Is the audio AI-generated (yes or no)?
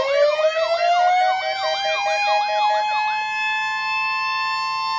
no